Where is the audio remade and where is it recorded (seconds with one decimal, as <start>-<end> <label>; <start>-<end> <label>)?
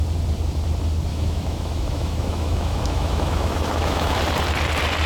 0.0-1.1 recorded; 1.1-4.2 remade; 4.2-5.1 recorded